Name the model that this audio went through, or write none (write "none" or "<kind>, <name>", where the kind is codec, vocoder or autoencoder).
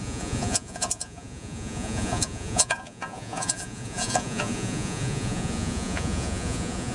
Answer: vocoder, Vocos